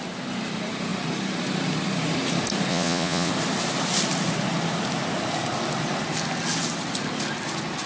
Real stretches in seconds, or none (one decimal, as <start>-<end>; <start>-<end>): 0.0-2.7; 3.3-7.9